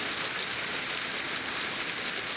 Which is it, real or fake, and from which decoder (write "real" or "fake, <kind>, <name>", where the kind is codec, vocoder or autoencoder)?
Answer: real